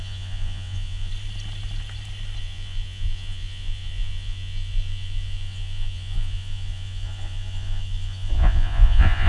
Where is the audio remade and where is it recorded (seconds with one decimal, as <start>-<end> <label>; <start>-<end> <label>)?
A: 0.0-1.1 remade; 1.1-2.4 recorded; 2.4-9.3 remade